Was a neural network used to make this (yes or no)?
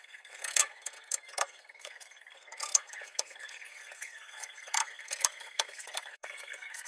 yes